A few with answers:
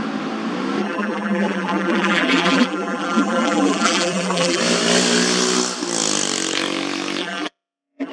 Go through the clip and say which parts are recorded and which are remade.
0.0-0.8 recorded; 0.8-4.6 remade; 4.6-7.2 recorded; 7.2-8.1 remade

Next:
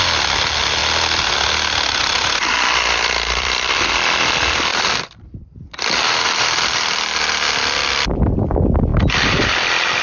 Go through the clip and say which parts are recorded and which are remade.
0.0-0.8 remade; 0.8-2.0 recorded; 2.0-2.5 remade; 2.5-3.1 recorded; 3.1-10.0 remade

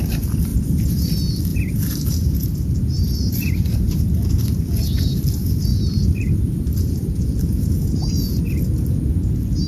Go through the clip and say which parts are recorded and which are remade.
0.0-0.5 recorded; 0.5-1.1 remade; 1.1-1.5 recorded; 1.5-4.0 remade; 4.0-5.7 recorded; 5.7-8.4 remade; 8.4-9.7 recorded

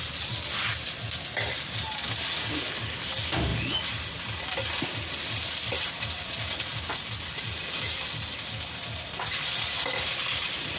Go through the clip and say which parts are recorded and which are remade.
0.0-3.5 remade; 3.5-4.4 recorded; 4.4-10.8 remade